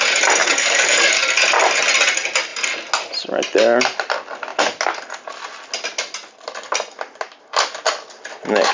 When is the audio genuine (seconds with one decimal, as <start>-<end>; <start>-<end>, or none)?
0.0-0.4; 1.1-8.7

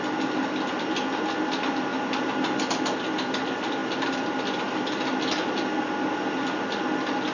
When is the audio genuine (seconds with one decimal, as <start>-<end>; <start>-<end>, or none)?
0.0-7.3

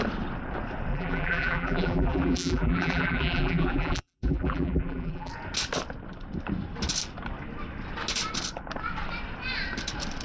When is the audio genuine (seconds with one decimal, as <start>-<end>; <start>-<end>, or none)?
0.0-0.9; 5.3-10.2

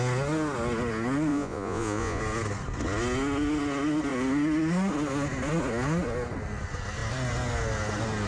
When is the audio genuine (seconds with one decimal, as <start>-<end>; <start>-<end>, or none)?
0.0-1.3; 2.2-8.3

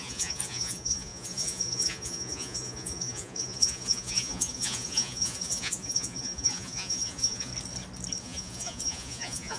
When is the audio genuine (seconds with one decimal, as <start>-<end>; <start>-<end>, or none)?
7.5-8.2